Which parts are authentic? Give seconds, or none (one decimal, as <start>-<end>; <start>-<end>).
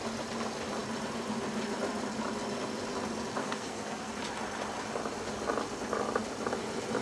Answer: 0.0-3.4; 4.1-7.0